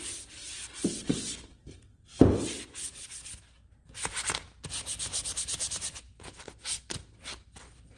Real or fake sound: real